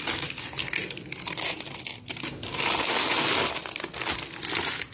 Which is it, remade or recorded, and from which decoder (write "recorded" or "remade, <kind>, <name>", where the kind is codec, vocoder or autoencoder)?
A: recorded